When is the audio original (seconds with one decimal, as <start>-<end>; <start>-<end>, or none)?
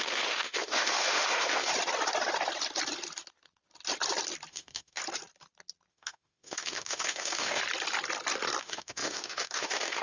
1.7-4.5; 5.0-5.9; 7.6-8.6